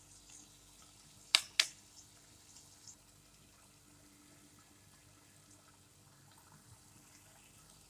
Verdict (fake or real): real